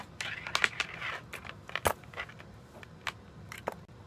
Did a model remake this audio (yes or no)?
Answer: no